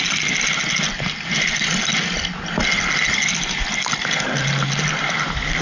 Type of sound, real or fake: real